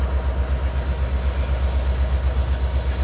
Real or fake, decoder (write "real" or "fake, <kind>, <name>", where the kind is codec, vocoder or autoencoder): real